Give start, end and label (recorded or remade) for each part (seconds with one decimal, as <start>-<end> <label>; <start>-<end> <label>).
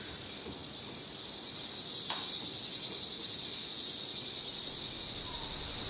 0.0-0.6 remade; 0.6-2.1 recorded; 2.1-5.9 remade